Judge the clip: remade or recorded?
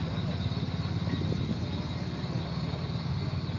recorded